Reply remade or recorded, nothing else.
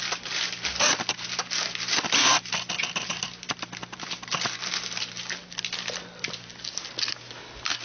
recorded